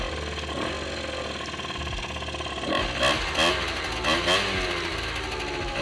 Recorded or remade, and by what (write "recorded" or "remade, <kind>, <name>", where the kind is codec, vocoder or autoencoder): recorded